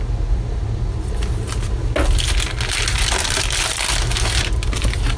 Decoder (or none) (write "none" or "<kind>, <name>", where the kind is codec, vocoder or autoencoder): none